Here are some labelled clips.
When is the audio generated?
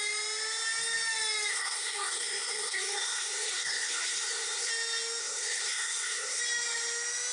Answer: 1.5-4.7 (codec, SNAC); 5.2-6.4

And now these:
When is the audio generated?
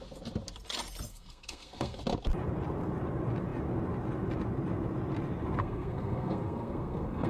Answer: 1.1-2.0 (codec, SNAC); 5.6-7.3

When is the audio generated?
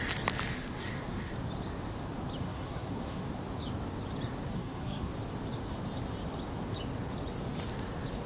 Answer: 0.5-1.3 (codec, SNAC); 2.4-3.3; 4.5-5.1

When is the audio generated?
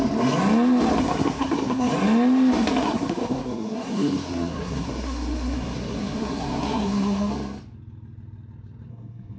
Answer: 1.0-1.9 (codec, SNAC); 2.8-7.3; 8.9-9.4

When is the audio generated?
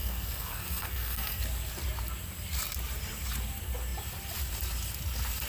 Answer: 0.0-1.4 (codec, SNAC)